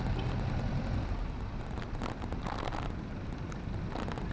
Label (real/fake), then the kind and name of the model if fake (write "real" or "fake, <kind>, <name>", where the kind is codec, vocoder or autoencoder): real